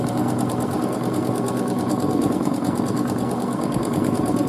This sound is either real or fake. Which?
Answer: fake